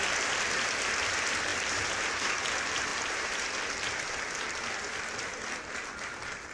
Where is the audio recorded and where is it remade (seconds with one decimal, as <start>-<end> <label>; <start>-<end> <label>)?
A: 0.0-1.5 recorded; 1.5-2.4 remade; 2.4-2.9 recorded; 2.9-3.7 remade; 3.7-6.5 recorded